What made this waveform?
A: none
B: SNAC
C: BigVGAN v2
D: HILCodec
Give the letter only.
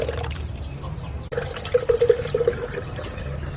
C